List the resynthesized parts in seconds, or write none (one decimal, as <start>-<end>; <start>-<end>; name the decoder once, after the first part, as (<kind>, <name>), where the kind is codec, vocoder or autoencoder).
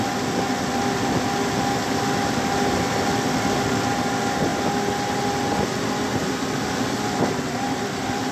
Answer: none